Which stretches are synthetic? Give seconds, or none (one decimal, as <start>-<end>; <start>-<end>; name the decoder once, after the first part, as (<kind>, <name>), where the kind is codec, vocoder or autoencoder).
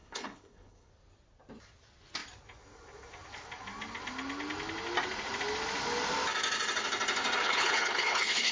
0.0-0.9 (codec, HILCodec); 7.4-8.5